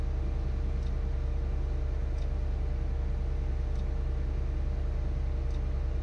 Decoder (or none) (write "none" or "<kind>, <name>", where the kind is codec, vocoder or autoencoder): none